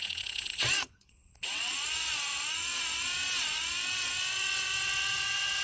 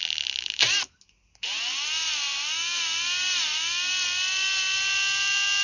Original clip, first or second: second